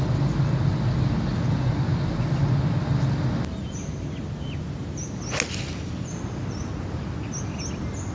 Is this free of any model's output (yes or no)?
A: yes